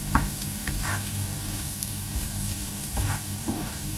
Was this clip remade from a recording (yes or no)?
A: yes